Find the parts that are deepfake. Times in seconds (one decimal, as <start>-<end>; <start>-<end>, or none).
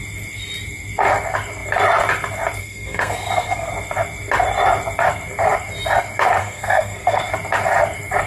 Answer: 2.6-3.7; 6.4-7.2